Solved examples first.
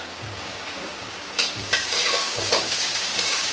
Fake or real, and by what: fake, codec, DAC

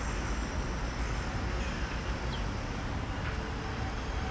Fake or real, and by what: real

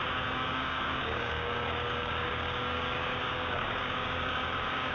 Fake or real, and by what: fake, codec, DAC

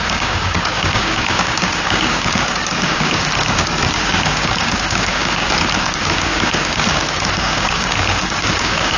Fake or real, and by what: fake, codec, DAC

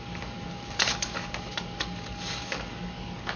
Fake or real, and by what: fake, codec, DAC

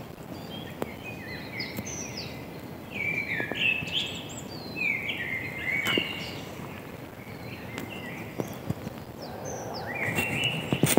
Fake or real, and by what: real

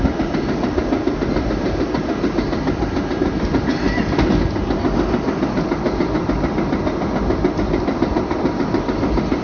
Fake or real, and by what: real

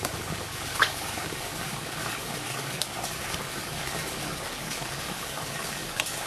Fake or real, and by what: fake, codec, DAC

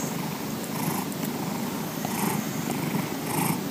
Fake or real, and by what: real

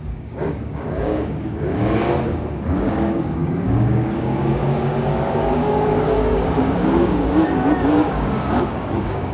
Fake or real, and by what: fake, codec, DAC